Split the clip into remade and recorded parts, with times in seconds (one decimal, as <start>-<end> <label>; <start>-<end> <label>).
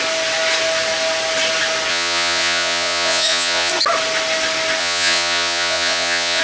0.0-1.9 recorded; 1.9-3.7 remade; 3.7-4.8 recorded; 4.8-6.4 remade